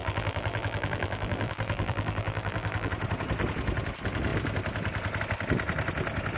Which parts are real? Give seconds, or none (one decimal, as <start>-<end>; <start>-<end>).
2.9-6.4